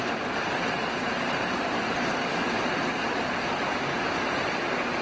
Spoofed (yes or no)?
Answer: no